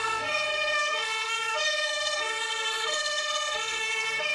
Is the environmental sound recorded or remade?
remade